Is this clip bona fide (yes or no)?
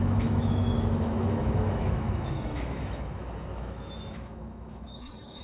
no